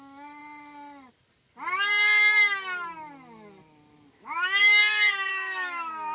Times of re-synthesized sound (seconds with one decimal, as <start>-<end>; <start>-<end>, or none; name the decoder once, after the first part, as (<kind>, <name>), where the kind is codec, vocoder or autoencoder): 0.0-0.4 (autoencoder, DAC-VAE); 4.1-4.8; 5.3-6.1